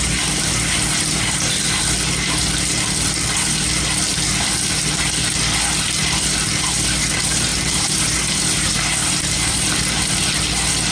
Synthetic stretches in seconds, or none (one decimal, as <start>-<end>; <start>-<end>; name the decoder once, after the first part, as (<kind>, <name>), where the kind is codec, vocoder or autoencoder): 7.5-9.6 (vocoder, BigVGAN v2)